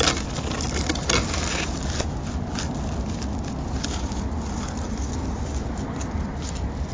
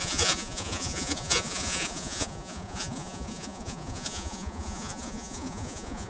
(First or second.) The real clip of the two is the first